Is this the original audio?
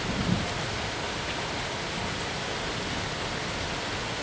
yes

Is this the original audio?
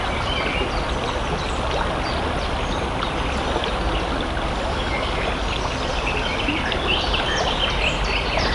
yes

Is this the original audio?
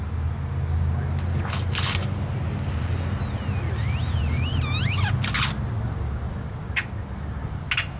yes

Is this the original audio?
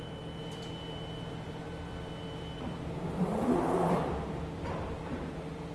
no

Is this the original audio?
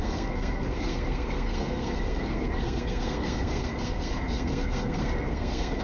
no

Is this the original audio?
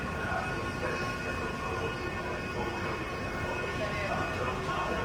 yes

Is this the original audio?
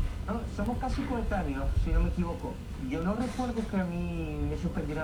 no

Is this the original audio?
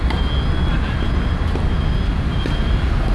yes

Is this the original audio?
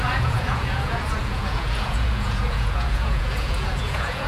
no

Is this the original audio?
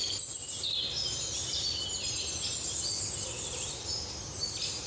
yes